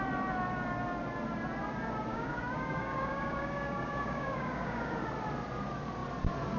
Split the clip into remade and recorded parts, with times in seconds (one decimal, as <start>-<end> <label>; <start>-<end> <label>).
0.0-2.1 recorded; 2.1-4.9 remade; 4.9-6.6 recorded